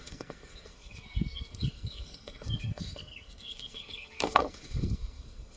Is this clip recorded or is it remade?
remade